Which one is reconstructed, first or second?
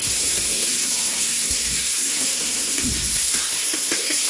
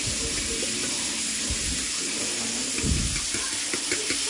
first